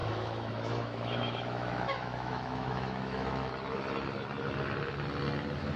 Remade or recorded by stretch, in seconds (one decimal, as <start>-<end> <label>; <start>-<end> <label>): 0.0-3.5 remade; 3.5-5.8 recorded